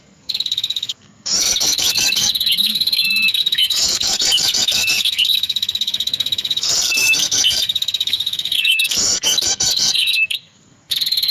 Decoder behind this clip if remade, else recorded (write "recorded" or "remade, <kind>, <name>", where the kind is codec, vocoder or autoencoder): remade, codec, SNAC